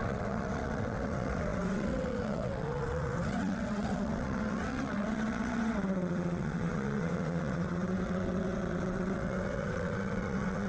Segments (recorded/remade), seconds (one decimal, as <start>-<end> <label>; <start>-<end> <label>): 0.0-10.7 remade